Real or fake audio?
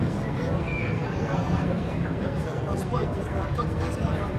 fake